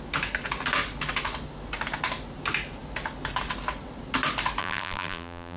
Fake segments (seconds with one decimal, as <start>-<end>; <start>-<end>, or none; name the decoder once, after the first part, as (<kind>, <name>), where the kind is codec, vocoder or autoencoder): 4.6-5.6 (vocoder, BigVGAN v2)

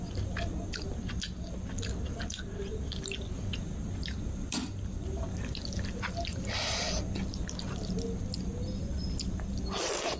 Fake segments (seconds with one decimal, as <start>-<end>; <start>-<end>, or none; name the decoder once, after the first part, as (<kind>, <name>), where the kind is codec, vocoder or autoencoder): 6.3-6.8 (vocoder, BigVGAN v2)

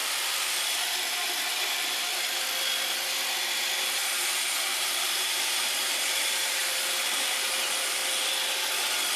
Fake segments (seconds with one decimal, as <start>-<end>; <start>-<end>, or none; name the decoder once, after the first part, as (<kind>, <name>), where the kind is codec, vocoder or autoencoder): 4.0-8.0 (vocoder, BigVGAN v2)

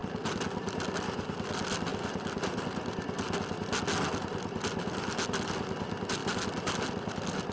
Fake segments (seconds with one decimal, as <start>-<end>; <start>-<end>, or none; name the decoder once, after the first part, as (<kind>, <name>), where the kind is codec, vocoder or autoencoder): none

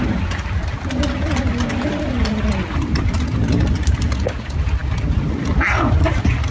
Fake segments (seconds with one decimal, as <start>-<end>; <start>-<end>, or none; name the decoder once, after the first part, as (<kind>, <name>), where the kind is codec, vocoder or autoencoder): none

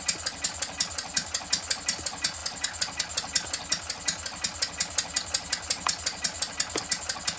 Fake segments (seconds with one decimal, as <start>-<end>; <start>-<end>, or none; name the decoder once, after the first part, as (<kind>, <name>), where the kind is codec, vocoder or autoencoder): none